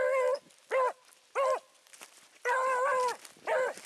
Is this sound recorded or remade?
recorded